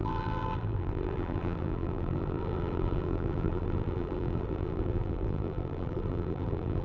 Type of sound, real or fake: fake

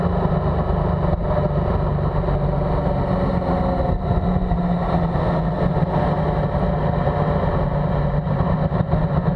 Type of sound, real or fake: real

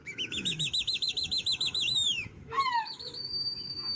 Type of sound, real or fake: fake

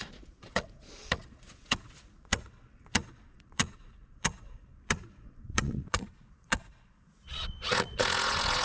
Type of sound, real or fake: fake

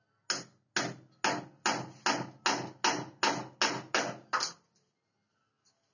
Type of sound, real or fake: real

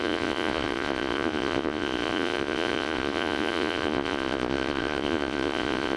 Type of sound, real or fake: fake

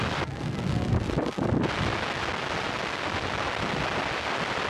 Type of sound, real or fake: real